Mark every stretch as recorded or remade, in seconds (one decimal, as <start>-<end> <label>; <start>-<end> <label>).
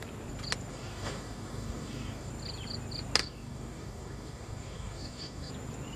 0.0-0.7 recorded; 0.7-2.3 remade; 2.3-3.2 recorded; 3.2-5.5 remade; 5.5-6.0 recorded